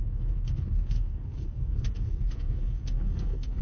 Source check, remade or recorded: remade